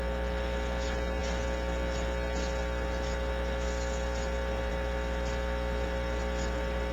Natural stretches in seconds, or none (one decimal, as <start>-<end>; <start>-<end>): 0.0-6.9